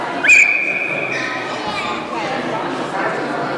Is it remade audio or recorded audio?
recorded